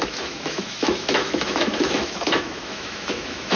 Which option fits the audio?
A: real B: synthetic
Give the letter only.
B